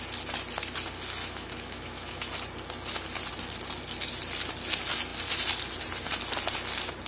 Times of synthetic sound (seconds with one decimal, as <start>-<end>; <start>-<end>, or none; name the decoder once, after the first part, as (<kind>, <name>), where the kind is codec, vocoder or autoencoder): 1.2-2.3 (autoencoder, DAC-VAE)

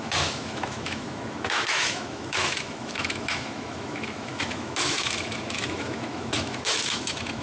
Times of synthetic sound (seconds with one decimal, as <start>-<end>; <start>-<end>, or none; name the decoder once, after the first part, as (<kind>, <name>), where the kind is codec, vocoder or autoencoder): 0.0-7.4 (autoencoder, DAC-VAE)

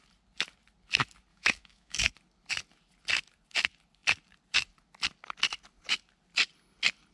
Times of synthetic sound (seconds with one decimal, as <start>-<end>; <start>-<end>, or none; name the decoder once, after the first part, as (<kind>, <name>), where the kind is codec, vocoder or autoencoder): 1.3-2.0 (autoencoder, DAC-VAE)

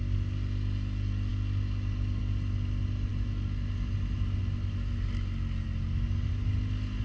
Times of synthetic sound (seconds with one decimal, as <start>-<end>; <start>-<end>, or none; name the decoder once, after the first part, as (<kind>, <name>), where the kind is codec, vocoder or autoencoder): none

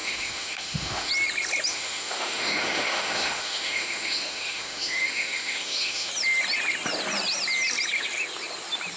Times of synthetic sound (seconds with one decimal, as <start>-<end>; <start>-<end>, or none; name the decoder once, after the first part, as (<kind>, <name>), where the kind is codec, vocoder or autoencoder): 0.0-1.1 (autoencoder, DAC-VAE); 1.7-6.1

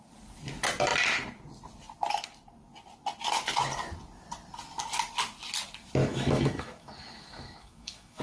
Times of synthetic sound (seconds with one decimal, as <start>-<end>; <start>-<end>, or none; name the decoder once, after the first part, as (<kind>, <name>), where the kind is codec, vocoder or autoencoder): 6.0-8.2 (autoencoder, DAC-VAE)

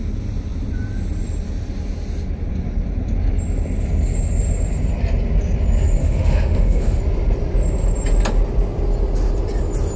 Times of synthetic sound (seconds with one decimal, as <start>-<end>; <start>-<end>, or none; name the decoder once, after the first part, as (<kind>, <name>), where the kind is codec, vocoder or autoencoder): 6.0-7.0 (autoencoder, DAC-VAE)

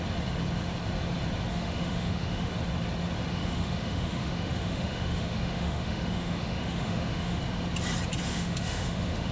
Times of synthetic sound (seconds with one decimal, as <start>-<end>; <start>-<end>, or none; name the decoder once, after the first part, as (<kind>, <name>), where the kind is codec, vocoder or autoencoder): 1.5-2.5 (autoencoder, DAC-VAE); 3.3-7.4; 8.3-9.3